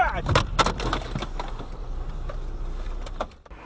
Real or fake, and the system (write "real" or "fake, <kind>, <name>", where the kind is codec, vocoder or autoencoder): real